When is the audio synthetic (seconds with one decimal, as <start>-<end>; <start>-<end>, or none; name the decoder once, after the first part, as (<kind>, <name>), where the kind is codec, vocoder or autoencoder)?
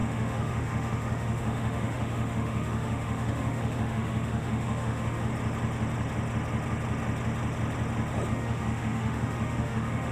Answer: 0.0-5.3 (autoencoder, DAC-VAE); 8.3-10.1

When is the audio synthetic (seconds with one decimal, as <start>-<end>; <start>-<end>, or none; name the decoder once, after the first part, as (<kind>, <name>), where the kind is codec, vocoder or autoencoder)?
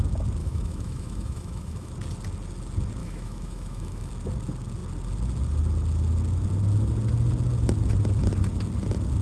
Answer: 0.4-1.9 (autoencoder, DAC-VAE); 3.0-4.1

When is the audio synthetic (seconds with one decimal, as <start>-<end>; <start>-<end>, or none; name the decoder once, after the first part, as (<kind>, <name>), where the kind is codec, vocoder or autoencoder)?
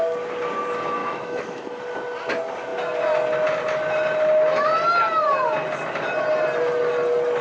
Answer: 1.0-1.8 (autoencoder, DAC-VAE)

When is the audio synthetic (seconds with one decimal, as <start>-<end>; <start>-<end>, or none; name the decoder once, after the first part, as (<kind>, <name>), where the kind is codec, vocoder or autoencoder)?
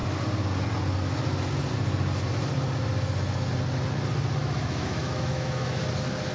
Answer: 4.4-5.8 (autoencoder, DAC-VAE)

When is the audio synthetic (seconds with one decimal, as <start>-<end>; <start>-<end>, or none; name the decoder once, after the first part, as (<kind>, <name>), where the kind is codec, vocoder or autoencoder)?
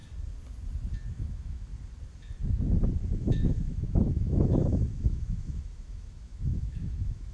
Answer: 1.1-1.7 (autoencoder, DAC-VAE); 3.1-7.3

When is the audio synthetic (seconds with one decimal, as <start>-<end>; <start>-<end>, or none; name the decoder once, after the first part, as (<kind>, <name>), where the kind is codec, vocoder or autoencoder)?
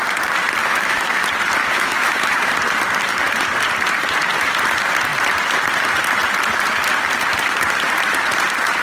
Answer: 0.6-1.2 (autoencoder, DAC-VAE); 1.6-2.5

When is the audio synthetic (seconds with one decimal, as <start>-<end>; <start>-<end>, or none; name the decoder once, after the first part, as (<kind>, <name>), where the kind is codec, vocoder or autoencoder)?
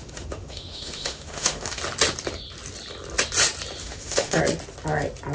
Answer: 0.0-1.8 (autoencoder, DAC-VAE); 3.8-4.4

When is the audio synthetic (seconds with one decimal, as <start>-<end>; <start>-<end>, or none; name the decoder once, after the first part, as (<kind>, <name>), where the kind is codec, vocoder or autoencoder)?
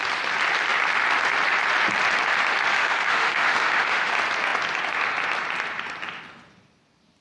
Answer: 2.7-4.1 (autoencoder, DAC-VAE)